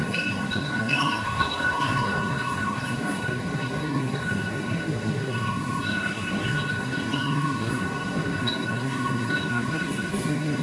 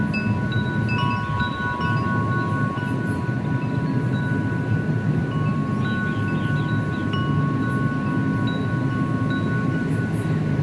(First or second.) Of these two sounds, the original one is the second